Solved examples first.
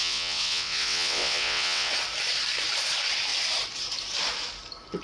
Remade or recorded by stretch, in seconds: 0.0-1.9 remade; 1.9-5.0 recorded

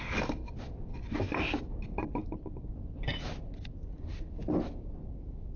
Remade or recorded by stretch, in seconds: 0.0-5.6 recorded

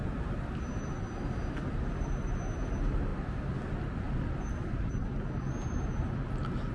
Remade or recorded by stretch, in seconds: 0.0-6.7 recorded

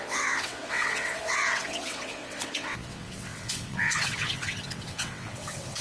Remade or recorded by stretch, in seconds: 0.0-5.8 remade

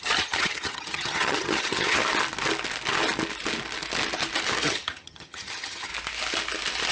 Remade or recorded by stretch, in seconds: 0.0-2.0 remade; 2.0-4.6 recorded; 4.6-5.9 remade; 5.9-6.9 recorded

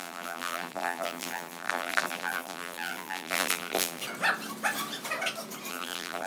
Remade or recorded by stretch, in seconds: 0.0-4.0 remade; 4.0-5.7 recorded; 5.7-6.3 remade

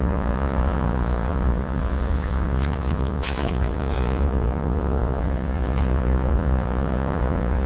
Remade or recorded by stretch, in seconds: 0.0-7.7 remade